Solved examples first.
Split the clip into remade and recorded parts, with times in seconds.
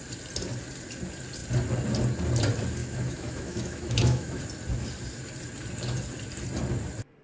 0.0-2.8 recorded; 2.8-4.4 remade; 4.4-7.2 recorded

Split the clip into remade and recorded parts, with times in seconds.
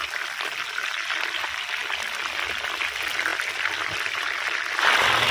0.0-5.3 recorded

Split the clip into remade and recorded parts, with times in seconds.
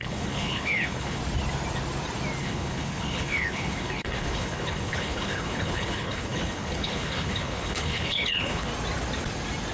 0.0-1.2 remade; 1.2-2.4 recorded; 2.4-8.7 remade; 8.7-9.7 recorded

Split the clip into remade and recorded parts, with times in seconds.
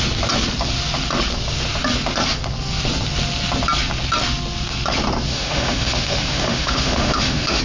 0.0-5.3 recorded; 5.3-7.6 remade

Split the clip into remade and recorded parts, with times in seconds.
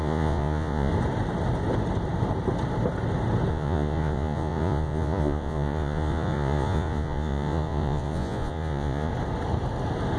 0.0-0.9 remade; 0.9-3.5 recorded; 3.5-9.1 remade; 9.1-10.2 recorded